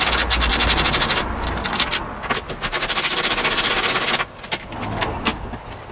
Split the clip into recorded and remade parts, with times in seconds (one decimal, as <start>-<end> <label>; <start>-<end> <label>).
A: 0.0-5.9 recorded

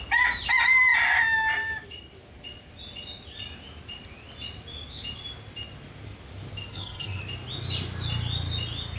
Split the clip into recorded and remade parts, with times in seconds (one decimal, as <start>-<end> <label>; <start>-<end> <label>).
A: 0.0-6.7 recorded; 6.7-7.2 remade; 7.2-9.0 recorded

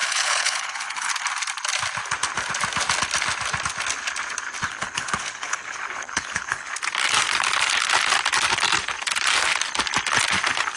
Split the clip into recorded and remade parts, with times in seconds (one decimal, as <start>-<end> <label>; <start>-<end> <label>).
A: 0.0-1.1 remade; 1.1-4.7 recorded; 4.7-6.7 remade; 6.7-10.8 recorded

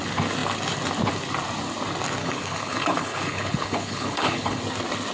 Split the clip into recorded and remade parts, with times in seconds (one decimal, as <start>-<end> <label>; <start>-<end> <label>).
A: 0.0-2.2 recorded; 2.2-4.6 remade; 4.6-5.1 recorded

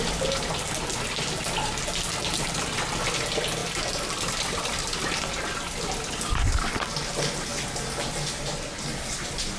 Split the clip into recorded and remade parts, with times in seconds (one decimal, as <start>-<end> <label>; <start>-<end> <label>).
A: 0.0-9.6 recorded

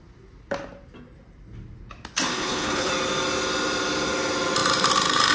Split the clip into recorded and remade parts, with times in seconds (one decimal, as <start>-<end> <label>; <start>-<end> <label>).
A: 0.0-2.3 recorded; 2.3-2.9 remade; 2.9-5.3 recorded

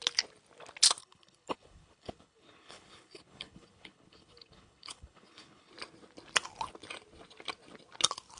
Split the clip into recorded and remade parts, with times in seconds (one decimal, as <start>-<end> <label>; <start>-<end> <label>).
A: 0.0-1.0 recorded; 1.0-5.7 remade; 5.7-8.4 recorded

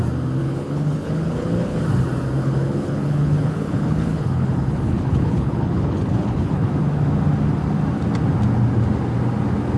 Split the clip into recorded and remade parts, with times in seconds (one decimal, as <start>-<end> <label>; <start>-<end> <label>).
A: 0.0-0.4 recorded; 0.4-1.8 remade; 1.8-2.4 recorded; 2.4-6.7 remade; 6.7-9.8 recorded